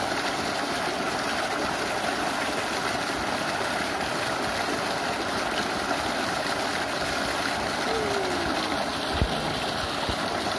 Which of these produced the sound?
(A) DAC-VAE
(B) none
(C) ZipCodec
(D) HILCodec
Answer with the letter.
B